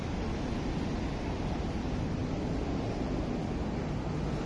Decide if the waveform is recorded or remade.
recorded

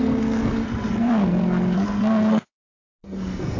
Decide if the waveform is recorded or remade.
remade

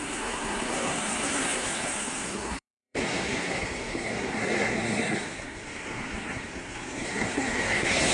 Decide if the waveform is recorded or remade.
remade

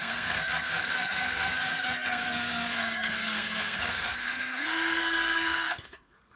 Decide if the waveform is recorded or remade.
remade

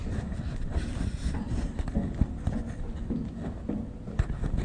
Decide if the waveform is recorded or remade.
recorded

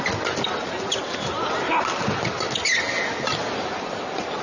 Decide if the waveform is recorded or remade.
recorded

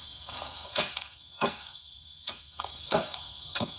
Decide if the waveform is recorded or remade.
remade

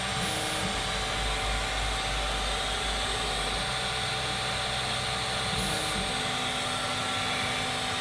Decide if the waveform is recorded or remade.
recorded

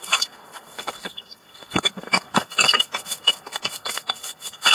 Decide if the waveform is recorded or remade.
remade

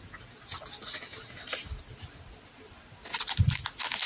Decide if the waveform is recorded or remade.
recorded